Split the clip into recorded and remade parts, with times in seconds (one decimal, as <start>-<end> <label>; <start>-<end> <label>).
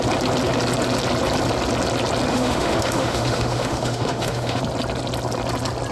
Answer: 0.0-2.3 recorded; 2.3-4.6 remade; 4.6-5.9 recorded